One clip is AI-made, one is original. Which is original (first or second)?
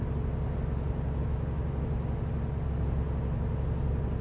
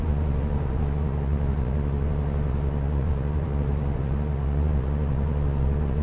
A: first